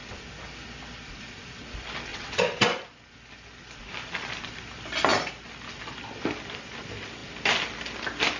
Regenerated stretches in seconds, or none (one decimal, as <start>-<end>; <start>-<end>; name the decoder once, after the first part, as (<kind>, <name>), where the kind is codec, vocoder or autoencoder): 2.1-2.7 (vocoder, WaveNeXt)